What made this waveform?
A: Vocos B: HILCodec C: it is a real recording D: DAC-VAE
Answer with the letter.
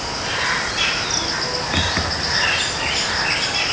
C